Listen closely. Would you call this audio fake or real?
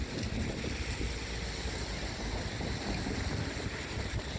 real